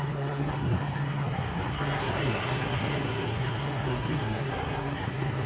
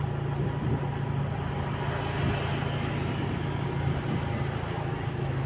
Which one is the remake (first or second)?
first